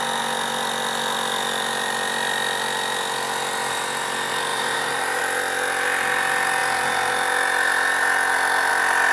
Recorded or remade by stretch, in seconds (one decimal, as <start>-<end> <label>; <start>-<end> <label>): 0.0-4.5 recorded; 4.5-5.2 remade; 5.2-9.1 recorded